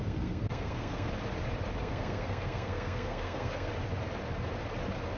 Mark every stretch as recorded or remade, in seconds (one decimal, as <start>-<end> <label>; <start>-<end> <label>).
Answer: 0.0-1.1 remade; 1.1-1.8 recorded; 1.8-3.7 remade; 3.7-5.2 recorded